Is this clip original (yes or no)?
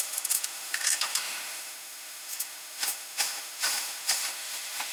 no